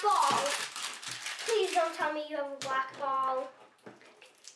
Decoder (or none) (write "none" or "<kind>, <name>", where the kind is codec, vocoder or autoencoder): vocoder, BigVGAN v2